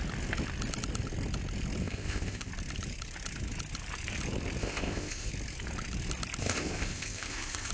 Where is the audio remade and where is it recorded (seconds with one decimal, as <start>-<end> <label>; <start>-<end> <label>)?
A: 0.0-1.8 recorded; 1.8-2.5 remade; 2.5-4.6 recorded; 4.6-5.3 remade; 5.3-6.4 recorded; 6.4-7.7 remade